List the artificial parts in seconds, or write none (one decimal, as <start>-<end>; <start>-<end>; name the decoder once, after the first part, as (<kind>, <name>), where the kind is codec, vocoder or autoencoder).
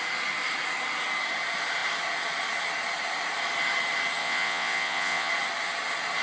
4.2-5.3 (vocoder, WaveNeXt)